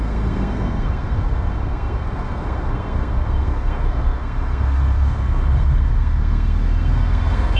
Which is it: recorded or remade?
remade